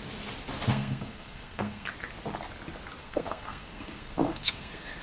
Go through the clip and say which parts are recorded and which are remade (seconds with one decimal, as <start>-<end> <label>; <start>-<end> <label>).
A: 0.0-0.7 recorded; 0.7-1.9 remade; 1.9-3.0 recorded; 3.0-5.0 remade